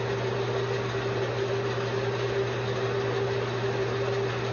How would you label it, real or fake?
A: real